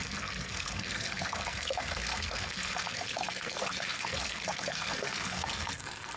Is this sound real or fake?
fake